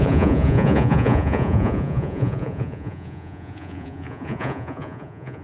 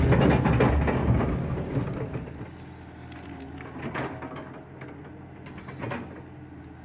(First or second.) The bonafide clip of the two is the second